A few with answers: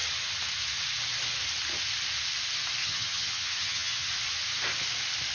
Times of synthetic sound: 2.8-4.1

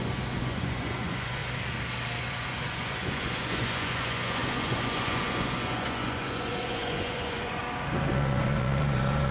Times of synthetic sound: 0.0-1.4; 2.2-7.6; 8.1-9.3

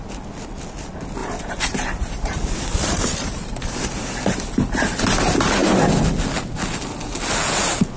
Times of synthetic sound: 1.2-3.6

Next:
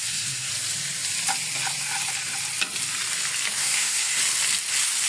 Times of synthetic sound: 0.0-0.5; 3.6-4.2

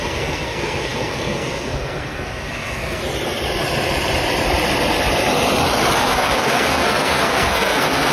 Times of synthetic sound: 0.0-3.0; 6.0-8.1

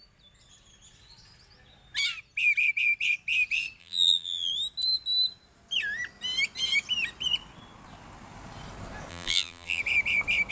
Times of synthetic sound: 3.8-4.5; 9.1-9.8